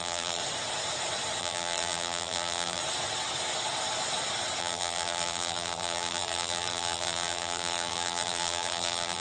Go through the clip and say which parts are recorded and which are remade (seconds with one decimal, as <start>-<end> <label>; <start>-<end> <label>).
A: 0.0-0.4 remade; 0.4-1.4 recorded; 1.4-2.8 remade; 2.8-4.6 recorded; 4.6-9.2 remade